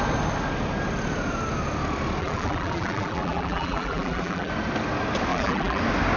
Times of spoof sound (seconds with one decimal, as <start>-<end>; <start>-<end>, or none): 2.2-4.5; 5.3-5.8